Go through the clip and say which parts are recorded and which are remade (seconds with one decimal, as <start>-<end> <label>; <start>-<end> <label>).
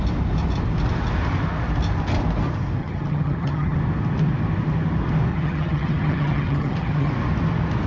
0.0-2.8 recorded; 2.8-3.8 remade; 3.8-5.3 recorded; 5.3-7.1 remade; 7.1-7.9 recorded